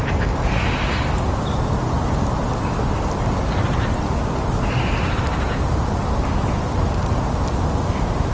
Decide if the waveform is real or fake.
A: real